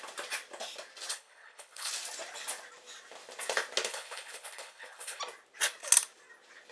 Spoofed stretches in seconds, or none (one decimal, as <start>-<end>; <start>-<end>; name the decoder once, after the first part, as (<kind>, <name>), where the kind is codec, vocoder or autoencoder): 1.1-1.9 (codec, HILCodec); 3.9-5.2